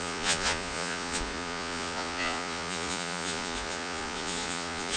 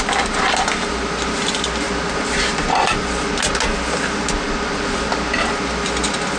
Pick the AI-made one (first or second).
first